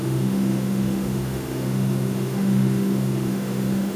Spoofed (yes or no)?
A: yes